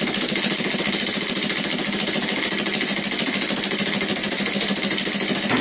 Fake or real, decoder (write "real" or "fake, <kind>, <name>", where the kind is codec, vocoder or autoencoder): real